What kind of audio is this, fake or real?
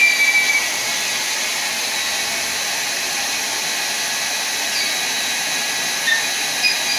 real